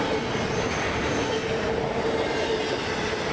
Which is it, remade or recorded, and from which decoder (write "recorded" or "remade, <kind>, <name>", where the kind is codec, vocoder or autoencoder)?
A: recorded